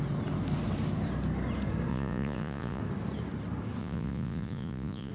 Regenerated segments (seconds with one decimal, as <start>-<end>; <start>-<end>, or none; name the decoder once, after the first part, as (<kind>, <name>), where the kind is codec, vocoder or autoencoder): 1.9-2.8 (vocoder, Vocos); 3.8-5.1